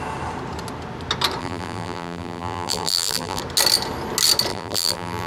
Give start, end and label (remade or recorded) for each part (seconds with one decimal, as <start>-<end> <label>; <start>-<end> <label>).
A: 0.0-1.4 recorded; 1.4-3.4 remade; 3.4-4.5 recorded; 4.5-5.3 remade